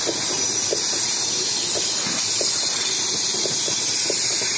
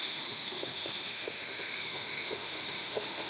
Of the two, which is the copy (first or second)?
second